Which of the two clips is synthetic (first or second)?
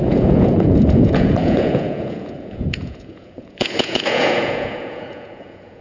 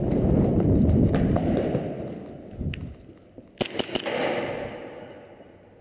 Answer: first